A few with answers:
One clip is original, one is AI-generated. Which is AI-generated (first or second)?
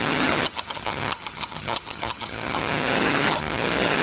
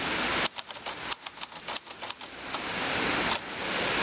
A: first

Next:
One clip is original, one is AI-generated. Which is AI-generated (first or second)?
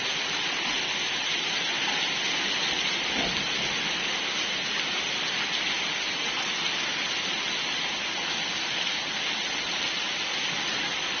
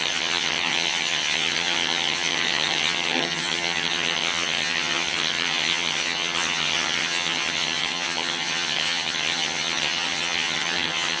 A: second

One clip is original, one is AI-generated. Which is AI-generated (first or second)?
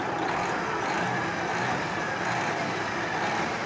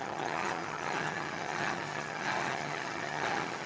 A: second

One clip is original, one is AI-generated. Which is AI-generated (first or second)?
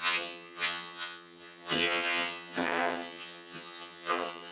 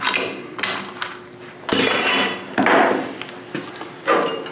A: first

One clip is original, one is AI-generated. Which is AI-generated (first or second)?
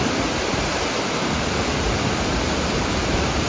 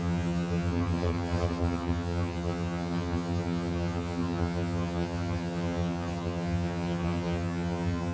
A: second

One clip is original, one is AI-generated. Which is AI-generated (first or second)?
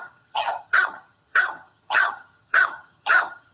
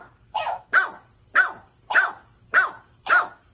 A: first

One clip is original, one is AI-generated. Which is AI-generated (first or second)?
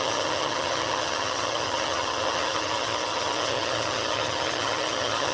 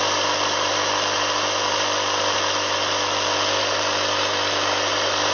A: first